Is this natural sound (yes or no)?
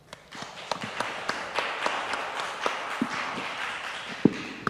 no